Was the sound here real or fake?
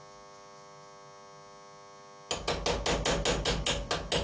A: real